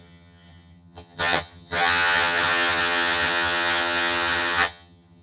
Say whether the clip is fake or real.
fake